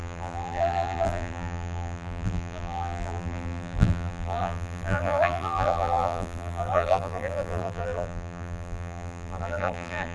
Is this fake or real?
fake